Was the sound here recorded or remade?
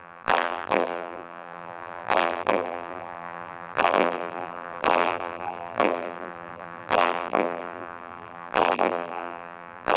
remade